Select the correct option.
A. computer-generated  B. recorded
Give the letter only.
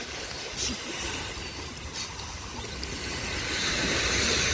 B